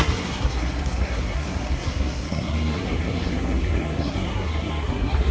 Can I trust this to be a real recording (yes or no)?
no